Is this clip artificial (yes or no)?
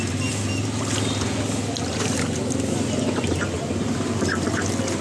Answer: no